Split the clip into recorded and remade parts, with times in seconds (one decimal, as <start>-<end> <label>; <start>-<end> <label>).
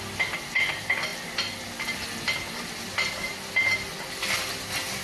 0.0-5.0 recorded